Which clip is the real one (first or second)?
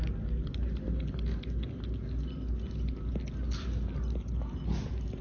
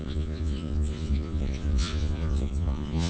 first